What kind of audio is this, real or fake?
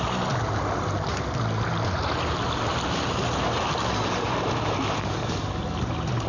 real